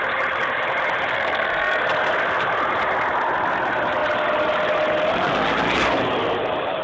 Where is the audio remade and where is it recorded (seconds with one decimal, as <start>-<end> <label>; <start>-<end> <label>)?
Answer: 0.0-1.1 recorded; 1.1-1.8 remade; 1.8-6.8 recorded